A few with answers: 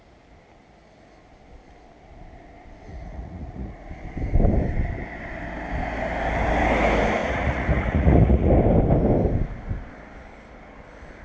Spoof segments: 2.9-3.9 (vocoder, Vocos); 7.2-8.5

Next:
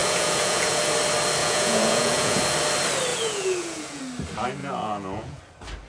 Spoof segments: 0.0-0.8 (vocoder, Vocos); 1.4-2.4; 3.1-4.0; 4.6-5.4

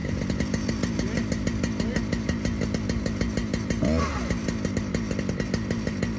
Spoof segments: none

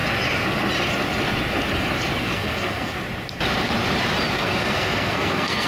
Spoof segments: 2.2-3.0 (codec, SNAC); 4.3-5.7

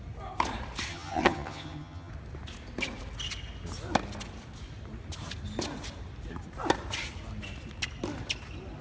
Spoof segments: 0.9-2.1 (vocoder, HiFi-GAN)